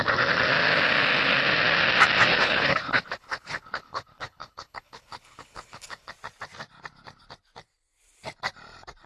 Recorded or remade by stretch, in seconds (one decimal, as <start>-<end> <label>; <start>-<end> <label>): 0.0-2.3 recorded; 2.3-6.1 remade; 6.1-9.1 recorded